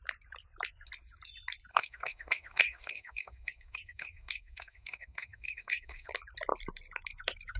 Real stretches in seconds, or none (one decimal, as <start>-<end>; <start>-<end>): 0.0-1.7; 6.1-7.6